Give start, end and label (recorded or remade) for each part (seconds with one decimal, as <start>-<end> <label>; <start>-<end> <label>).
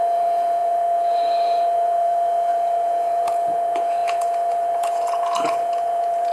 0.0-6.3 remade